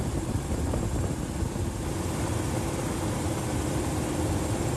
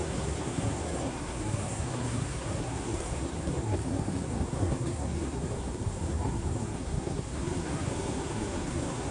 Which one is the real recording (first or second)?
first